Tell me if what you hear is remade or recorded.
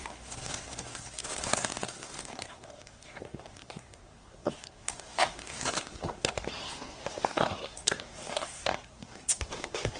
remade